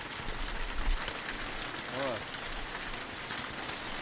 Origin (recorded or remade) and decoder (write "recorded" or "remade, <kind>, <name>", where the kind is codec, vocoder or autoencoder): recorded